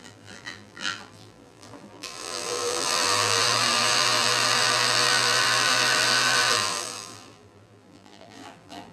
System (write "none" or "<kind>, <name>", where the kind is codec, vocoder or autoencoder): vocoder, BigVGAN v2